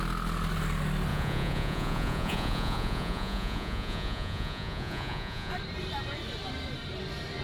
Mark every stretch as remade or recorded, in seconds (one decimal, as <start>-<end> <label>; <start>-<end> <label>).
0.0-1.1 recorded; 1.1-5.5 remade; 5.5-7.4 recorded